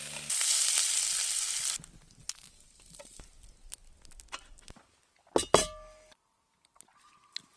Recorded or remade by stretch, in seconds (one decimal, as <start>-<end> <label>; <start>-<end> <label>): 0.0-7.6 recorded